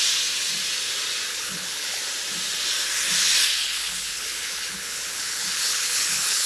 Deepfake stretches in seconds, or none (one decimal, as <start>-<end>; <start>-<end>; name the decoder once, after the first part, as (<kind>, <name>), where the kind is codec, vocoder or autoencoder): 1.3-2.0 (codec, HILCodec); 3.5-6.5